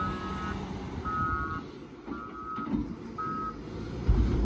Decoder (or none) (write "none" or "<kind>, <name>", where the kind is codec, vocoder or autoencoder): none